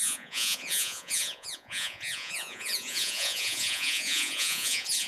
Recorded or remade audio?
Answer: remade